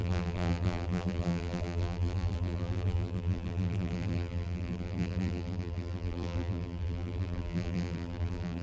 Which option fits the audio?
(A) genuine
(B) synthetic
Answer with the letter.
B